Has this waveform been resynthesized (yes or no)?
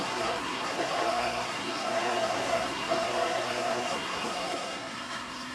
yes